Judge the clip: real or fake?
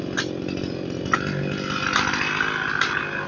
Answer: real